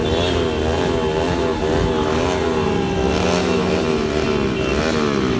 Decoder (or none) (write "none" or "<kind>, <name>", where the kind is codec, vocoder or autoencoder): none